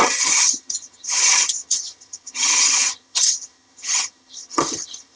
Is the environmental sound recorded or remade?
remade